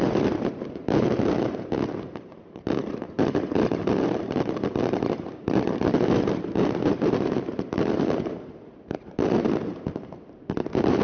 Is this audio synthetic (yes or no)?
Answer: yes